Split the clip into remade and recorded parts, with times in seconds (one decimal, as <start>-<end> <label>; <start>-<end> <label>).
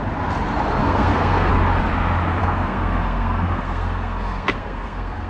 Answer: 0.0-0.8 recorded; 0.8-1.5 remade; 1.5-2.4 recorded; 2.4-5.3 remade